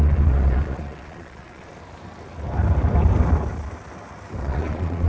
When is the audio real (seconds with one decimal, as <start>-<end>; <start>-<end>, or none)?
1.7-4.4